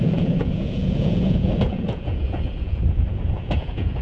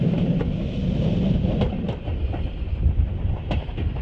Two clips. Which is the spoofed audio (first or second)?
first